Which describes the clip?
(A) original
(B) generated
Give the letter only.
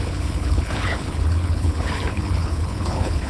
B